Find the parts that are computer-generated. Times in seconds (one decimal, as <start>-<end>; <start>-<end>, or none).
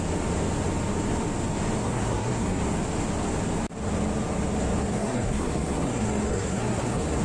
1.8-2.6; 4.8-7.2